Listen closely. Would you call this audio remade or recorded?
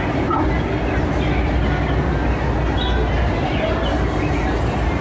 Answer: recorded